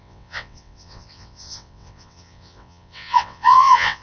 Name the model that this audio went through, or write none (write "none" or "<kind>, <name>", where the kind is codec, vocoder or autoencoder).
vocoder, WaveNeXt